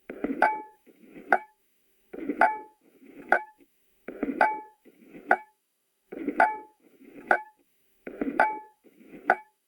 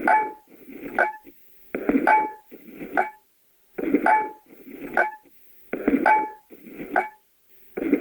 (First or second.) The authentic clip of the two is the second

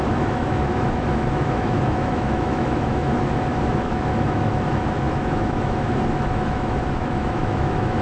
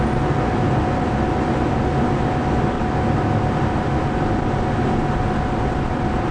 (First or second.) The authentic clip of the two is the second